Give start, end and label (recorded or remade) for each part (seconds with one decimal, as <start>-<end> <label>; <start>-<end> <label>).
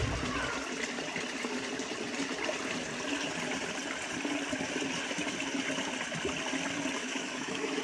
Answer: 0.0-7.0 recorded; 7.0-7.8 remade